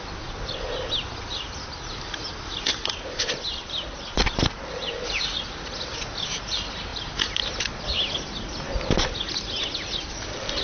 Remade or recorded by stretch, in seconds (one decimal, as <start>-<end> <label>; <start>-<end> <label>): 0.0-10.6 recorded